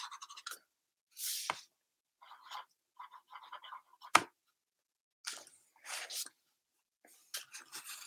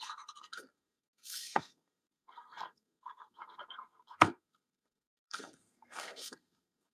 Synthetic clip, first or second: second